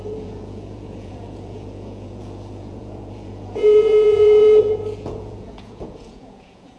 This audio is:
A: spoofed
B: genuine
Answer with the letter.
A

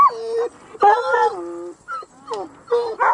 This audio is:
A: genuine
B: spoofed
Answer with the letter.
A